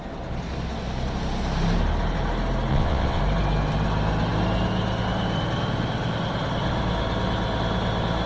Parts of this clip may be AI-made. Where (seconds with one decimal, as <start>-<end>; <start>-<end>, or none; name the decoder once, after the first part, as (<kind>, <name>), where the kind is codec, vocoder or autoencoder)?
2.7-3.2 (vocoder, WaveNeXt)